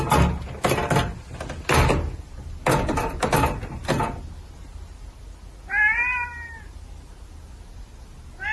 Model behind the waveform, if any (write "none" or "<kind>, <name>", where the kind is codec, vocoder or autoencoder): none